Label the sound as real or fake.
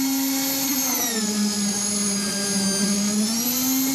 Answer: real